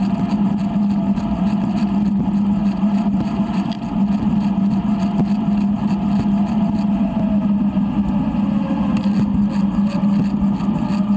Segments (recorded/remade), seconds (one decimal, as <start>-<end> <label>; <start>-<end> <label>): 0.0-2.6 recorded; 2.6-3.7 remade; 3.7-11.2 recorded